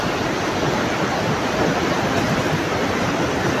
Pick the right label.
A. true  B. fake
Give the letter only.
A